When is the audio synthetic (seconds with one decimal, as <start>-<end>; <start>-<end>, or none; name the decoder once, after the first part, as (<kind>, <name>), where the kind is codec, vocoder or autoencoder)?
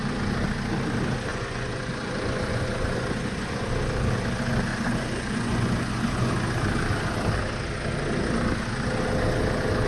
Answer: 1.3-3.7 (vocoder, Vocos); 4.7-6.3